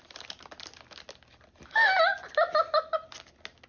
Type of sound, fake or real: real